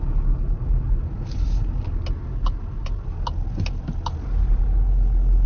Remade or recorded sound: recorded